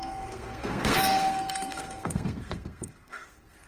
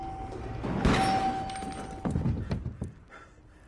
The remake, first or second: first